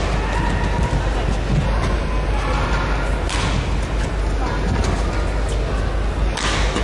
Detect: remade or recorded recorded